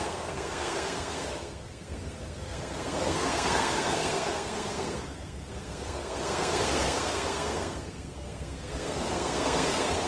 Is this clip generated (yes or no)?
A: yes